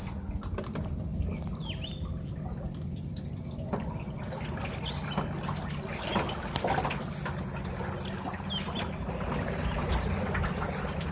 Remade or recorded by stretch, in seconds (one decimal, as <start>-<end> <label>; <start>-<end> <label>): 0.0-11.1 recorded